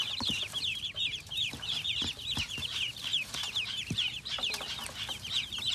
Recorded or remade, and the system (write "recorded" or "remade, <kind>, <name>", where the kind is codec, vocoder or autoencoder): remade, vocoder, BigVGAN v2